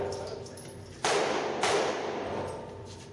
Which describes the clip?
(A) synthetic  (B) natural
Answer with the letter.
B